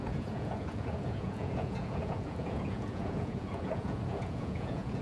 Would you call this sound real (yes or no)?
no